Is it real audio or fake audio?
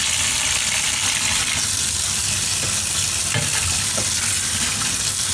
real